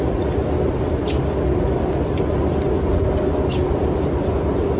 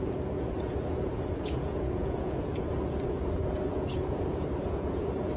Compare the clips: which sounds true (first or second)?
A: first